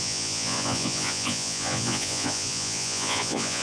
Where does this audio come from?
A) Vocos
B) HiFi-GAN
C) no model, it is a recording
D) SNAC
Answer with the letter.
A